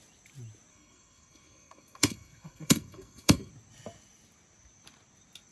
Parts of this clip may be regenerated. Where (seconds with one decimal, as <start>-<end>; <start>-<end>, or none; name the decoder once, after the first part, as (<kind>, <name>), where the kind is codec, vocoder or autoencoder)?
0.7-3.5 (codec, SNAC)